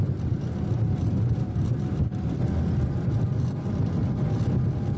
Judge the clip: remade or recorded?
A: recorded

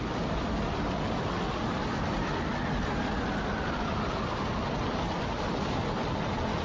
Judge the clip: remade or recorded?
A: recorded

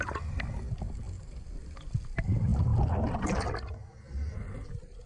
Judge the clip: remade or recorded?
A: recorded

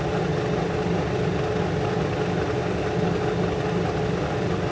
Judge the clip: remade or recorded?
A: recorded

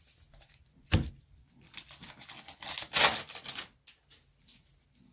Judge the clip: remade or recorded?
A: recorded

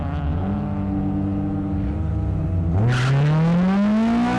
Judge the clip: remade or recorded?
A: recorded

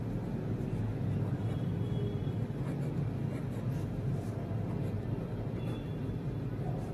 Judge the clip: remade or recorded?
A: recorded